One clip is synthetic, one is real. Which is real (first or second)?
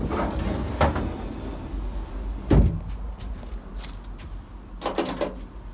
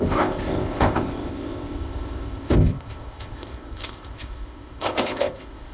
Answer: first